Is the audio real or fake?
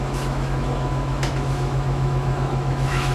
fake